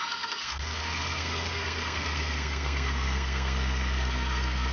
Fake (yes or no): yes